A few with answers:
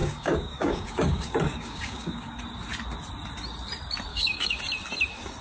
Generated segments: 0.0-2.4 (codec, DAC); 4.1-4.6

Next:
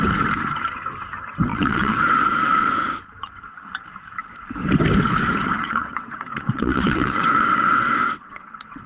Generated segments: 1.5-2.7 (vocoder, WaveNeXt); 5.6-8.9

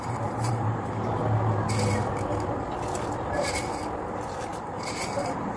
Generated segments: 0.0-1.1 (vocoder, BigVGAN v2); 4.5-5.6

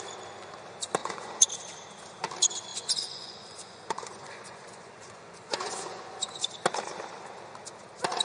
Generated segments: 1.0-1.5 (vocoder, Vocos); 2.7-6.5

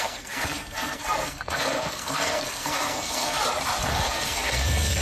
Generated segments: 0.0-3.4 (codec, SNAC); 3.9-5.0

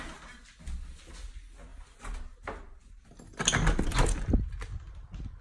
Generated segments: none